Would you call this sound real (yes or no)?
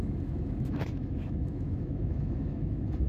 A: no